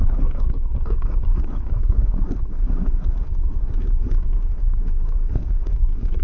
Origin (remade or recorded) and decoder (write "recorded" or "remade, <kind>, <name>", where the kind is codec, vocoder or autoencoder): remade, codec, SNAC